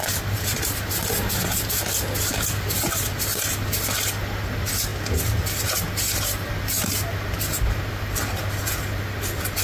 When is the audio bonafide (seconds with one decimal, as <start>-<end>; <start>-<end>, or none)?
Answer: 0.0-9.6